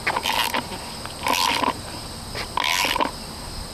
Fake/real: real